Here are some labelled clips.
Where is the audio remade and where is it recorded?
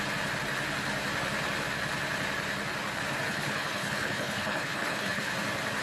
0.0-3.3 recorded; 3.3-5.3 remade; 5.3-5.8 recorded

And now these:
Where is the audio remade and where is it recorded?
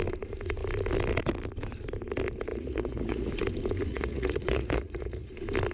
0.0-2.5 recorded; 2.5-3.3 remade; 3.3-3.9 recorded; 3.9-5.3 remade; 5.3-5.7 recorded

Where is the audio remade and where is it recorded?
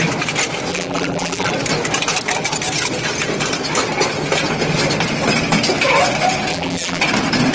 0.0-0.7 recorded; 0.7-1.5 remade; 1.5-6.5 recorded; 6.5-7.0 remade; 7.0-7.5 recorded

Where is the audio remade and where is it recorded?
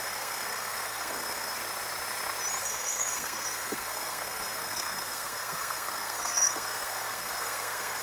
0.0-1.6 remade; 1.6-2.6 recorded; 2.6-8.0 remade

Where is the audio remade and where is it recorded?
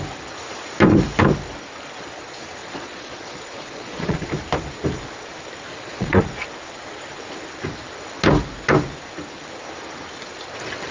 0.0-2.6 recorded; 2.6-4.3 remade; 4.3-5.7 recorded; 5.7-6.2 remade; 6.2-10.9 recorded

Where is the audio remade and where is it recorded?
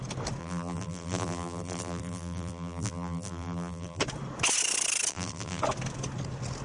0.0-0.4 recorded; 0.4-4.0 remade; 4.0-5.1 recorded; 5.1-5.6 remade; 5.6-6.6 recorded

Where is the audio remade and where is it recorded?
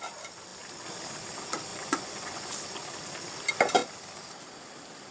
0.0-1.7 recorded; 1.7-2.5 remade; 2.5-5.1 recorded